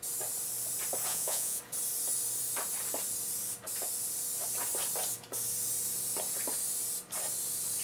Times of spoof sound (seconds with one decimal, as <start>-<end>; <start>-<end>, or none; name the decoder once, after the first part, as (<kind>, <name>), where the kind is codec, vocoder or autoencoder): 1.1-1.6 (vocoder, Vocos)